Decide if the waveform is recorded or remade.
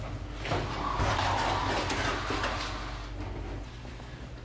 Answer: recorded